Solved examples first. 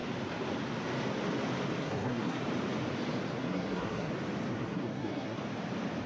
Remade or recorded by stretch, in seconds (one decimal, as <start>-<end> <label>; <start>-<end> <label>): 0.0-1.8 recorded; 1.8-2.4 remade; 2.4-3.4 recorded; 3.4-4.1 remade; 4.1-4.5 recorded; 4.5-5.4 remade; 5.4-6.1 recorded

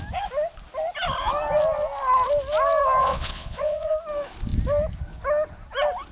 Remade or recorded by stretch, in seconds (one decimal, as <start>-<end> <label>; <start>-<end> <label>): 0.0-3.0 recorded; 3.0-3.9 remade; 3.9-6.1 recorded

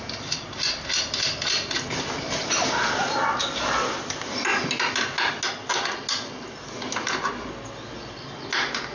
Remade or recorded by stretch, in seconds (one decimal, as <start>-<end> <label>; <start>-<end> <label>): 0.0-8.9 recorded

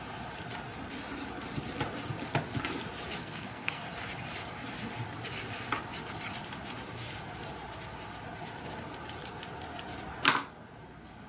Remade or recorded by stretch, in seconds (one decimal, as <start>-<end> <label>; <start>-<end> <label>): 0.0-3.2 recorded; 3.2-3.8 remade; 3.8-11.3 recorded

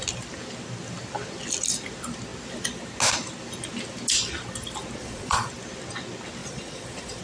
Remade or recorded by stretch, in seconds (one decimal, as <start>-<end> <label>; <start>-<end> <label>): 0.0-5.0 recorded; 5.0-5.5 remade; 5.5-6.4 recorded; 6.4-7.2 remade

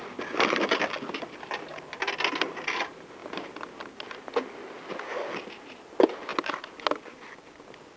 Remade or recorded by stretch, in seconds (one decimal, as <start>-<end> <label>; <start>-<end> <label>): 0.0-8.0 recorded

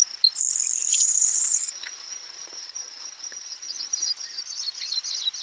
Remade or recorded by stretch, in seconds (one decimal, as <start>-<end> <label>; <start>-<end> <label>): 0.0-0.9 recorded; 0.9-4.1 remade; 4.1-5.4 recorded

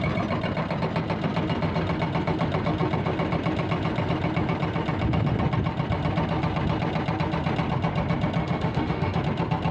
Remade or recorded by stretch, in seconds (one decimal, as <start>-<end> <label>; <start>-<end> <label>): 0.0-8.4 recorded; 8.4-9.2 remade; 9.2-9.7 recorded